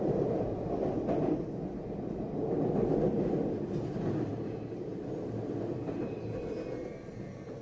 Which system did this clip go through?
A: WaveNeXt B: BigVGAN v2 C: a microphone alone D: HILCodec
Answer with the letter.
C